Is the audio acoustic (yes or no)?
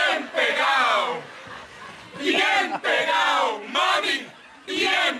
no